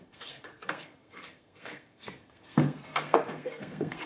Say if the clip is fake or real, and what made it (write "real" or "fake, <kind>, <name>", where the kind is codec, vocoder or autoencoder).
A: fake, codec, SNAC